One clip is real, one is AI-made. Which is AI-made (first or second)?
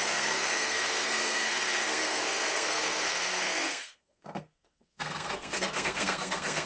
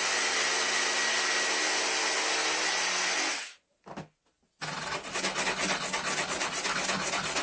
first